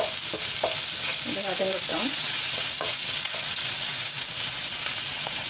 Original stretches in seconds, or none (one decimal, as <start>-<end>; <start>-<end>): 0.0-1.9